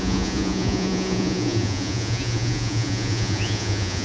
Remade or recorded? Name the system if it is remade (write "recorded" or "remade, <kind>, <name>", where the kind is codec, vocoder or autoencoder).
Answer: remade, vocoder, Vocos